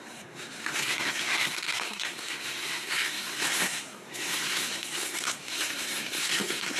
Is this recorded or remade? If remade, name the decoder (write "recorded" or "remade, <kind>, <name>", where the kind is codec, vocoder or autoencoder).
remade, codec, SNAC